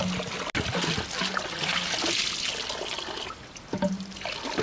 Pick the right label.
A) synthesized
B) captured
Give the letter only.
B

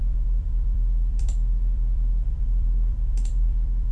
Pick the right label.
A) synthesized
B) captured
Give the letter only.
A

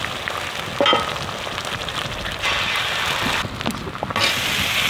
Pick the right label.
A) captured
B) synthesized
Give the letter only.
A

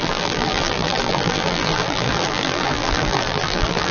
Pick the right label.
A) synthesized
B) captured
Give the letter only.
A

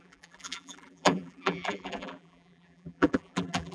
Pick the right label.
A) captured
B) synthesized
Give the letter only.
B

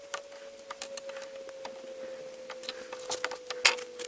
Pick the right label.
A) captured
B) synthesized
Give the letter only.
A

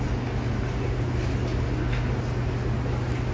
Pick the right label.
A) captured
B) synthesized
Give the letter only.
A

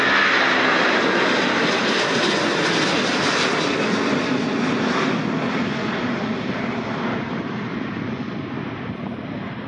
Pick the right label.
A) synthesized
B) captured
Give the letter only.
B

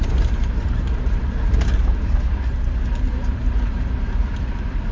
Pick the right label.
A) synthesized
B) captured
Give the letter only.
A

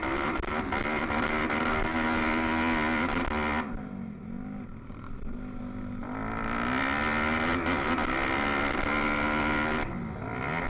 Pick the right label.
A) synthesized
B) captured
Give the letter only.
B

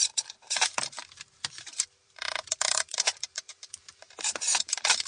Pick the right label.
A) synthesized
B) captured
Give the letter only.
A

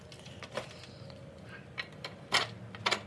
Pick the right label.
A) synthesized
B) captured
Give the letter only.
B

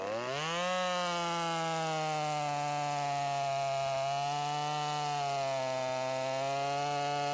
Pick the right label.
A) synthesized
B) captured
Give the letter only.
B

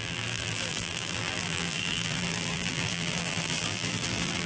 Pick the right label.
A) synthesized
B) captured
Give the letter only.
A